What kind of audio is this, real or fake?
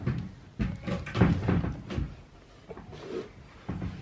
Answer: real